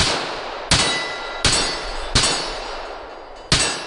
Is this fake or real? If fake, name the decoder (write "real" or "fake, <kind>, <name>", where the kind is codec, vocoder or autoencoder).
real